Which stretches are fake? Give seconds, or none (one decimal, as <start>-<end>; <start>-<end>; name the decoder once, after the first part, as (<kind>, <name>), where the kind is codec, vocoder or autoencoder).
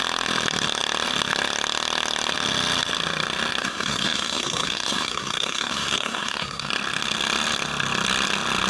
3.6-6.7 (codec, SNAC)